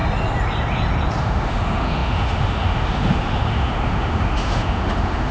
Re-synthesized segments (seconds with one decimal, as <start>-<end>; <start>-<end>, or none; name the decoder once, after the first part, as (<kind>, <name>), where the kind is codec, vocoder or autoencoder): 1.2-5.3 (autoencoder, DAC-VAE)